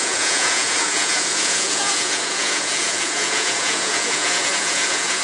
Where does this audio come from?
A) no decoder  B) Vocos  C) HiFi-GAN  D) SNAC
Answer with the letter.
B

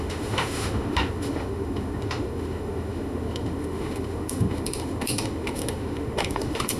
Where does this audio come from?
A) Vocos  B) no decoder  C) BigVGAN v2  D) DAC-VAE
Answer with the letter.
D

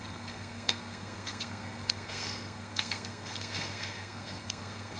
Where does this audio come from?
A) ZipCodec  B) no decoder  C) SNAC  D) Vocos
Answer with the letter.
C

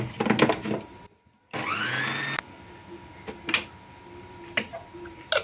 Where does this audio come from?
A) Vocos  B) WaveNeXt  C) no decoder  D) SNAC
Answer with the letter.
C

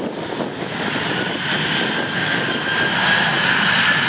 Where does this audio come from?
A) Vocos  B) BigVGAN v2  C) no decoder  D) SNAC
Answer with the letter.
C